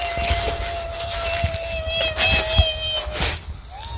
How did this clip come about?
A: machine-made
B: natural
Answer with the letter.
B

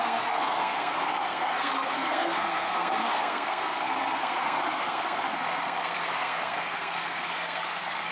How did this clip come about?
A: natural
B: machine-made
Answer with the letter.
B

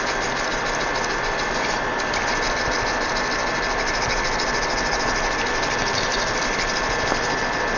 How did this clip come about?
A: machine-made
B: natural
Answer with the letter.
B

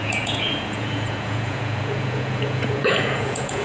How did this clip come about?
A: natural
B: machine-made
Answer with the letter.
B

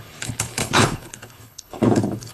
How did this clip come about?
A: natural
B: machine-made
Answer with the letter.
B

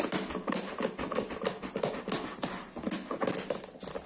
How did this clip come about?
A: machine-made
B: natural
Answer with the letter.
B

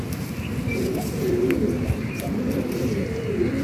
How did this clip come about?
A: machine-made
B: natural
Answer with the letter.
B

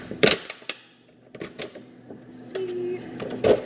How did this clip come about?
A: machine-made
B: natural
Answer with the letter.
B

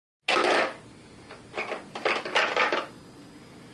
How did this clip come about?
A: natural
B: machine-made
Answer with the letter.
A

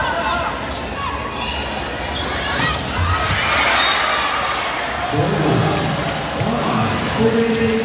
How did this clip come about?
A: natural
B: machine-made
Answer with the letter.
A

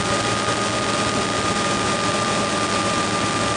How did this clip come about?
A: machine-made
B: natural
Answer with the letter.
B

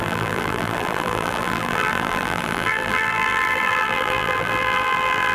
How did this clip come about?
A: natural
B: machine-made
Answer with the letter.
B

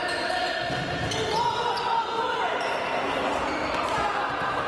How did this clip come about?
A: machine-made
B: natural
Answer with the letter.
B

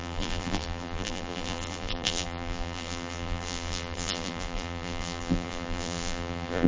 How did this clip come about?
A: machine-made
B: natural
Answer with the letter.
A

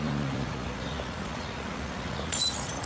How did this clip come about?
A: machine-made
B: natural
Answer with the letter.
A